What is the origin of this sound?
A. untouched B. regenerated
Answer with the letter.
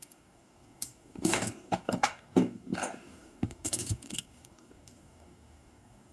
B